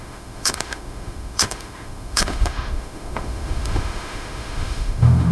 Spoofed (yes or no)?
yes